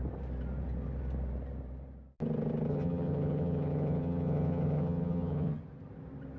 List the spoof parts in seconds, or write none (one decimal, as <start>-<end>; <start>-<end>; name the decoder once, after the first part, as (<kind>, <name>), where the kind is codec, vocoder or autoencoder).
2.7-5.6 (vocoder, HiFi-GAN)